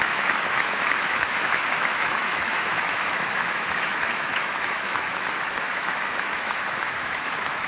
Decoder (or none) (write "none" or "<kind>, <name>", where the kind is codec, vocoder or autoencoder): autoencoder, DAC-VAE